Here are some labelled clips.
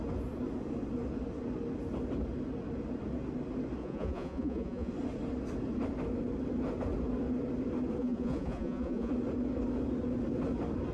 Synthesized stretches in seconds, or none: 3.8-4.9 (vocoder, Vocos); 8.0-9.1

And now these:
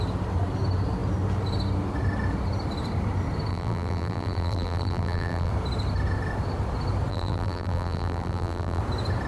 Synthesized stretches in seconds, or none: 3.5-5.5 (vocoder, BigVGAN v2); 7.1-8.8

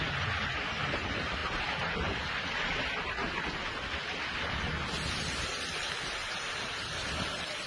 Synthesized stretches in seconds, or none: none

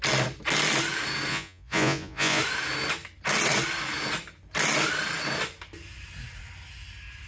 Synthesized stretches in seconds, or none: 1.3-2.4 (vocoder, Vocos)

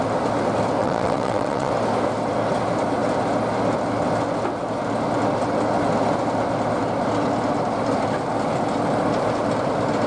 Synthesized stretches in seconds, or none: 0.8-1.7 (vocoder, WaveNeXt)

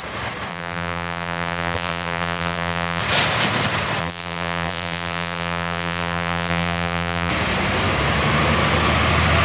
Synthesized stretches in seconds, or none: 0.5-3.0 (vocoder, BigVGAN v2); 4.0-7.3

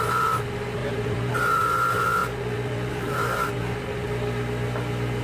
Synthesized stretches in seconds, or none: 0.8-1.3 (vocoder, BigVGAN v2)

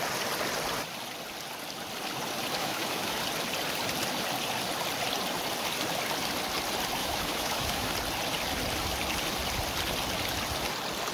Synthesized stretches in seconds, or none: 2.6-3.2 (autoencoder, DAC-VAE); 7.0-7.9